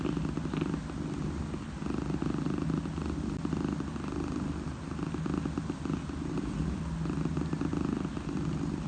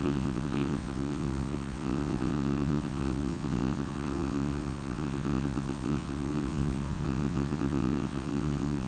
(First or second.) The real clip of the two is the first